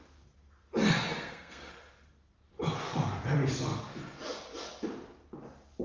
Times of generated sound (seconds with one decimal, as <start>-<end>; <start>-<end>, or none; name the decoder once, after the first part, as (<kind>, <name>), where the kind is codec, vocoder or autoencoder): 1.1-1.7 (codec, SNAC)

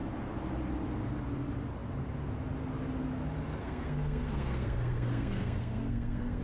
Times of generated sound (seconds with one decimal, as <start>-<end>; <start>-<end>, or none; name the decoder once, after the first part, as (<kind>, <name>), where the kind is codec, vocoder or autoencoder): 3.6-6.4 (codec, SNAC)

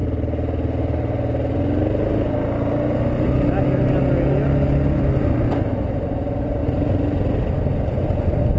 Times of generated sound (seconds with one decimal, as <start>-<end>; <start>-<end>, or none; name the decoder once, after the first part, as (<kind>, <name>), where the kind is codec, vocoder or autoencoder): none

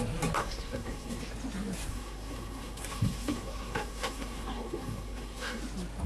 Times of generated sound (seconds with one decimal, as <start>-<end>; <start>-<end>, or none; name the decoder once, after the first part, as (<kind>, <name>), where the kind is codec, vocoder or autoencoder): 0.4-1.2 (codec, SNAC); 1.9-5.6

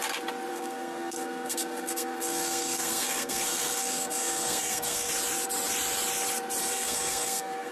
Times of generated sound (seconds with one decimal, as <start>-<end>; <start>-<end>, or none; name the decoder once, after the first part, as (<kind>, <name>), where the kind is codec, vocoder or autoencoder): 0.5-5.1 (codec, SNAC); 6.6-7.7

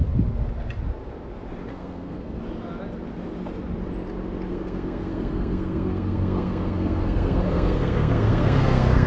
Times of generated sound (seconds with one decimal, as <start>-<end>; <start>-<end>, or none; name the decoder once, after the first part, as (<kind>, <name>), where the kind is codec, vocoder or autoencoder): 1.7-2.4 (codec, SNAC); 4.5-9.1

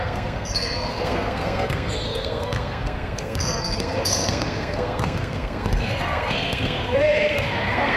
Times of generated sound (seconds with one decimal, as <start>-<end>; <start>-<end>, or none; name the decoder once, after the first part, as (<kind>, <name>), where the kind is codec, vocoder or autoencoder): 0.0-8.0 (codec, SNAC)